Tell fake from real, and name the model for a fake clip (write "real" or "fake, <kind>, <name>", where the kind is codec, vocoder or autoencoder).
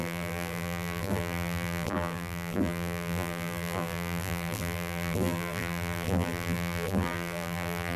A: fake, vocoder, BigVGAN v2